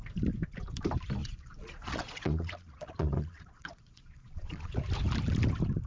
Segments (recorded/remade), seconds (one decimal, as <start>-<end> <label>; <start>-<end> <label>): 0.0-1.2 recorded; 1.2-4.7 remade; 4.7-5.9 recorded